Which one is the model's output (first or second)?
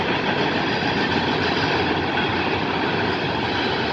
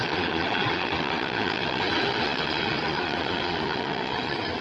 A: second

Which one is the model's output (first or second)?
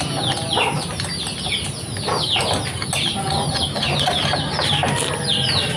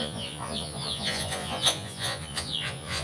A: second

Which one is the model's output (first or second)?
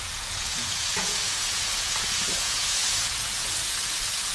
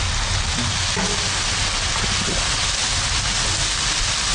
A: first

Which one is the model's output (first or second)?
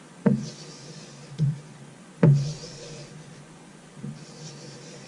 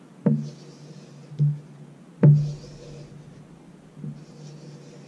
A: first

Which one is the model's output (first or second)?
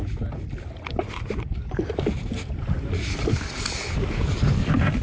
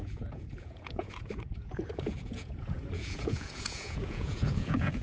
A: second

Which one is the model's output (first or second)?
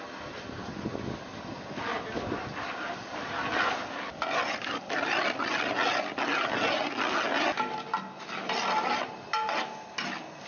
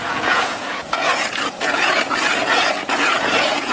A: second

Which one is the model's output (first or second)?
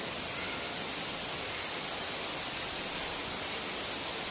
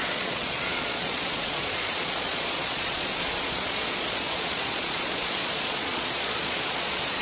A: second